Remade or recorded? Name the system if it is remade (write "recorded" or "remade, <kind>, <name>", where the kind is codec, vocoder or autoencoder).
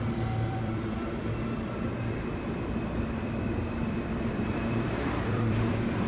remade, vocoder, BigVGAN v2